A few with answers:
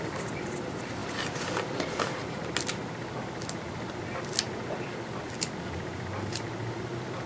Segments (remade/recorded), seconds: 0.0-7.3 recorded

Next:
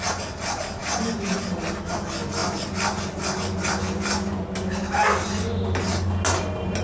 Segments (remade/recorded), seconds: 0.0-6.8 recorded

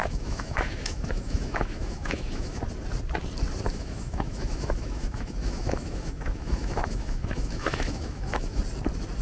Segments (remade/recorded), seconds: 0.0-2.6 remade; 2.6-3.7 recorded; 3.7-8.6 remade; 8.6-9.2 recorded

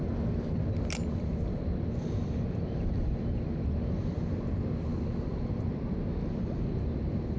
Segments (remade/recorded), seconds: 0.0-7.4 recorded

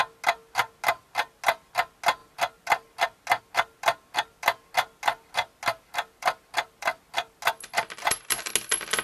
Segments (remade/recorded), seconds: 0.0-9.0 recorded

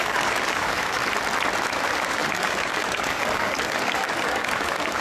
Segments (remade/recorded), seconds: 0.0-1.0 remade; 1.0-1.7 recorded; 1.7-5.0 remade

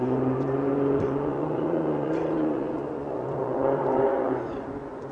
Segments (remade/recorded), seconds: 0.0-5.1 remade

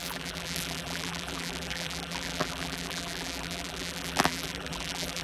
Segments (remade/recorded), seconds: 0.0-5.2 remade